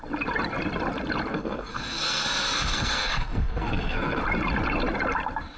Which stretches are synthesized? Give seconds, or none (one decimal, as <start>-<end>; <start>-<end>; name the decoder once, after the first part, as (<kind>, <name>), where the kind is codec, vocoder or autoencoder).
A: 1.3-4.2 (codec, SNAC)